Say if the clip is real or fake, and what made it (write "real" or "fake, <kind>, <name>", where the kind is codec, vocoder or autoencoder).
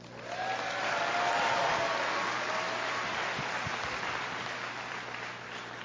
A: real